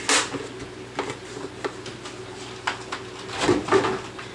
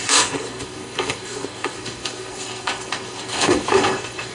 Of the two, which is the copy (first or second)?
second